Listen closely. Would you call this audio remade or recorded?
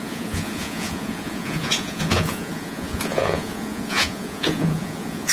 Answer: remade